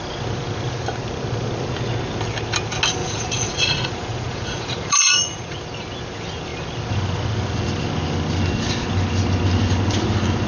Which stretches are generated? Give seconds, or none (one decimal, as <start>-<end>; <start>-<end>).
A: 3.0-5.6